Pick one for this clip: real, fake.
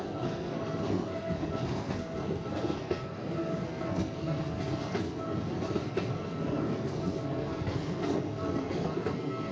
fake